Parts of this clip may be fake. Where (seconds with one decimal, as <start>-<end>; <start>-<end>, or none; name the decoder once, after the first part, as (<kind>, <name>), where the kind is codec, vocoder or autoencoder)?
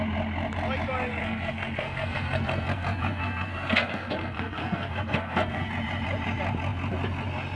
1.2-5.7 (codec, SNAC)